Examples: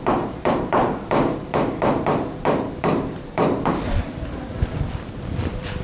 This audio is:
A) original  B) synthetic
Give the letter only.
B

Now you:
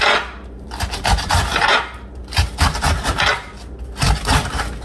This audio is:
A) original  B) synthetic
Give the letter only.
B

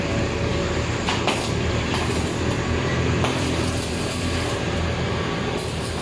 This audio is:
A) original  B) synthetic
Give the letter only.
B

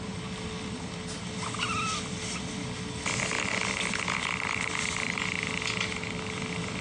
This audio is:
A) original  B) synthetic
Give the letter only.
A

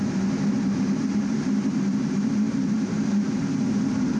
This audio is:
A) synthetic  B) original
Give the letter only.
A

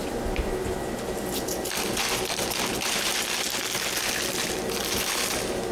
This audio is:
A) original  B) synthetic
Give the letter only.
B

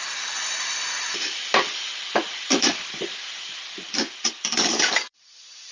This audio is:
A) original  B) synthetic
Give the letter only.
B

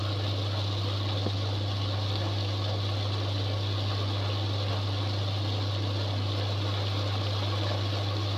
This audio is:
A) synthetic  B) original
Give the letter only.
B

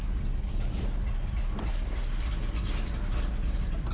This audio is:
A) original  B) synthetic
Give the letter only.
A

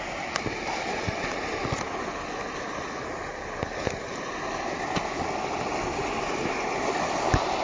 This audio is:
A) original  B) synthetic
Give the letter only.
A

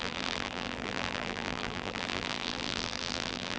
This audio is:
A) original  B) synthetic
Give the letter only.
B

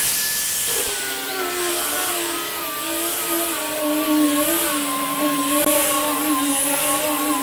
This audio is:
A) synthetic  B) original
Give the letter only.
B